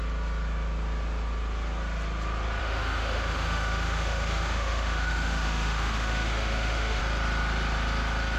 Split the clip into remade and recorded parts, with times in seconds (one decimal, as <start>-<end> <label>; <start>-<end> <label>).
0.0-2.6 recorded; 2.6-7.0 remade; 7.0-8.4 recorded